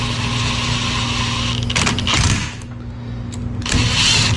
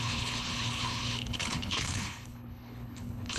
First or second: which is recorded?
first